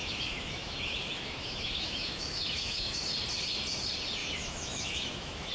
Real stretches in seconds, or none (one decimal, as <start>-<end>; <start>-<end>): 3.0-4.2

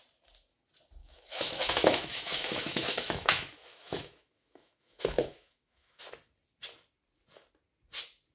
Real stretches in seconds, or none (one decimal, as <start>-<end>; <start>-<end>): 0.0-1.0; 6.0-8.3

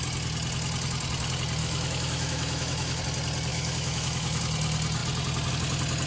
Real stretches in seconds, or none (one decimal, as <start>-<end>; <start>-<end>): 0.0-1.6; 3.0-3.5; 4.4-6.1

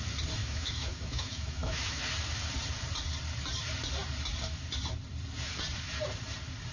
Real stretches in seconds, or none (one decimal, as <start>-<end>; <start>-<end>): 0.0-0.4; 2.0-6.7

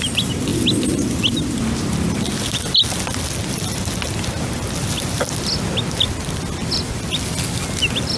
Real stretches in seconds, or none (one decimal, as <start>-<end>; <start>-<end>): 0.0-8.2